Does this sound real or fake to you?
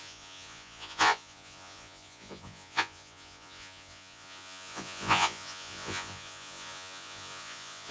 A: fake